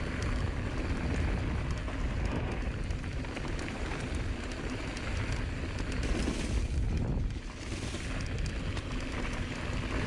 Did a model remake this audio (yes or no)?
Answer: no